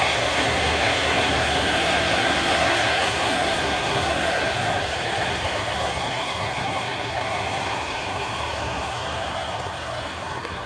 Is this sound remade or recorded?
remade